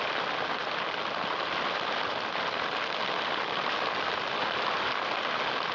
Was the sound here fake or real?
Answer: real